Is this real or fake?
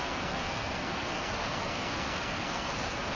fake